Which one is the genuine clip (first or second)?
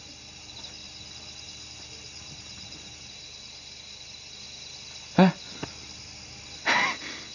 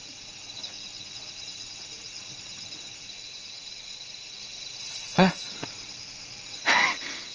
first